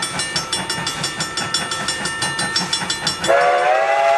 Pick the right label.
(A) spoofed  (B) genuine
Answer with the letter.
B